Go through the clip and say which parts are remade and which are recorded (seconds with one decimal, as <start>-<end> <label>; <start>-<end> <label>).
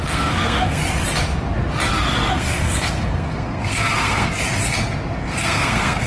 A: 0.0-0.8 remade; 0.8-2.3 recorded; 2.3-4.3 remade; 4.3-5.2 recorded; 5.2-6.1 remade